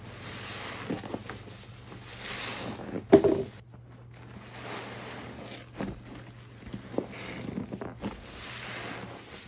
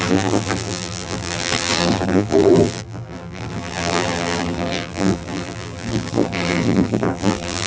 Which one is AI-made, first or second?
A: second